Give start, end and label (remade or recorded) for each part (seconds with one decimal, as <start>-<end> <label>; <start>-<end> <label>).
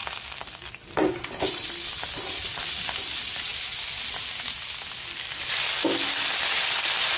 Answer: 0.0-3.5 remade; 3.5-6.5 recorded; 6.5-7.2 remade